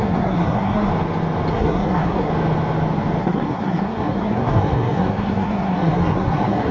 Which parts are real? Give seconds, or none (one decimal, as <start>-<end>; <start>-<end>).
0.9-1.5; 2.3-3.2